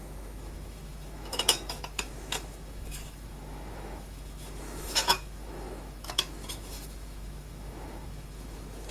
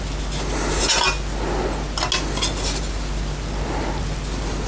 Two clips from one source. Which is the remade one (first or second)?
first